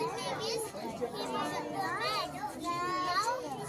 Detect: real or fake real